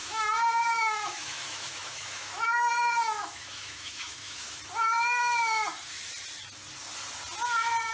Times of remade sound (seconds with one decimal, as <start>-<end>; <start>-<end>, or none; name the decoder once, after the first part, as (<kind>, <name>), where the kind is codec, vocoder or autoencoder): 0.0-4.6 (autoencoder, DAC-VAE)